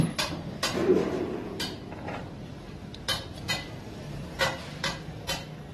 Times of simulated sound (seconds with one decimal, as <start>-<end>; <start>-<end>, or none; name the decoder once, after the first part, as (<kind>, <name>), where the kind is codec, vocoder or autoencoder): 0.0-5.7 (vocoder, BigVGAN v2)